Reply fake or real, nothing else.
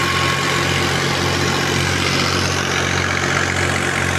real